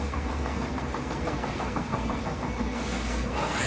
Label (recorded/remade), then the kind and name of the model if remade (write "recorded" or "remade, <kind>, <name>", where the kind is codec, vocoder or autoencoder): remade, codec, SNAC